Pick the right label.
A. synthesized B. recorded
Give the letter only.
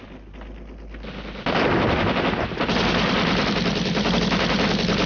B